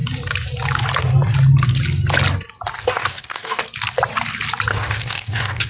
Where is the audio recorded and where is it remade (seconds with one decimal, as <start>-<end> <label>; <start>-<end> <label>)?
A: 0.0-2.8 recorded; 2.8-3.6 remade; 3.6-4.7 recorded; 4.7-5.7 remade